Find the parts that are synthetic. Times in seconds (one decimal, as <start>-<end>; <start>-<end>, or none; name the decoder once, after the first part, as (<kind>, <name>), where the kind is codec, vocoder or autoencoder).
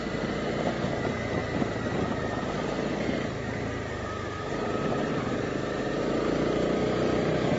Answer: 1.4-6.0 (vocoder, BigVGAN v2)